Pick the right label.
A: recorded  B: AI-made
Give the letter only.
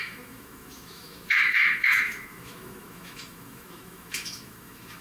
B